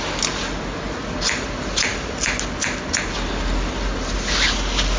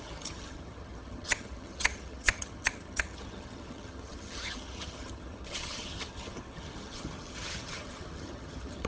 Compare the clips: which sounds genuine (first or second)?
first